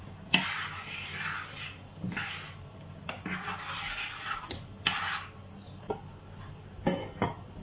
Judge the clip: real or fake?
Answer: real